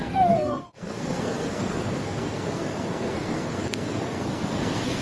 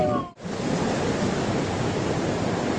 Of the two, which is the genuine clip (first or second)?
second